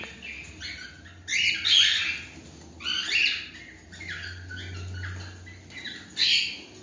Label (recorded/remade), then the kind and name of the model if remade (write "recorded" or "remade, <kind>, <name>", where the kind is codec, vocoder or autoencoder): recorded